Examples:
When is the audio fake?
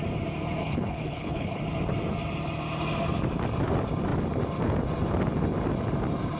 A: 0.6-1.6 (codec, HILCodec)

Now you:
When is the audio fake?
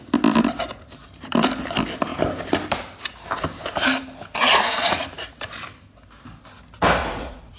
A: 4.4-5.3 (vocoder, Vocos); 7.0-7.6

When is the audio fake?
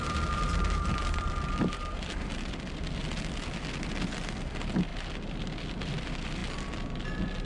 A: 0.0-4.9 (vocoder, BigVGAN v2); 5.8-7.5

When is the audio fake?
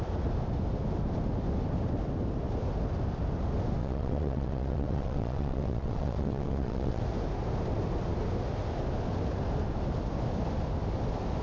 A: 3.8-7.0 (vocoder, WaveNeXt)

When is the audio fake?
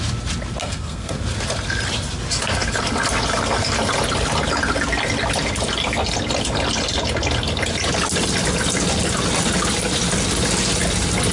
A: 0.6-1.2 (codec, SNAC)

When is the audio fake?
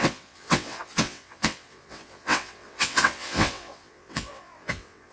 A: 0.0-5.1 (vocoder, WaveNeXt)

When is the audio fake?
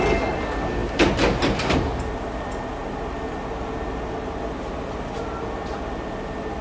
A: none